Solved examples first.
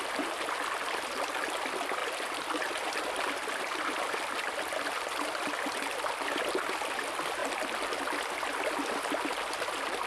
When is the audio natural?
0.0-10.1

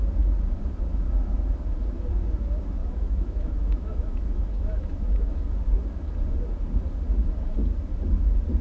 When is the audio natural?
0.0-2.8; 5.4-8.6

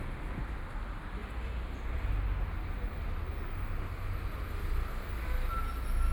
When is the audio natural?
0.0-6.1

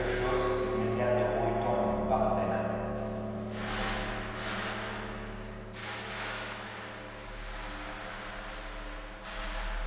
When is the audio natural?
0.0-5.8; 6.7-9.9